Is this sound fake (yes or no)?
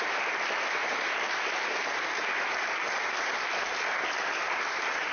no